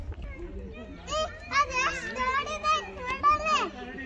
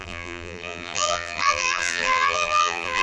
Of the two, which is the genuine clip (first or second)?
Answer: first